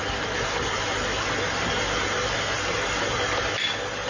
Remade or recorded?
recorded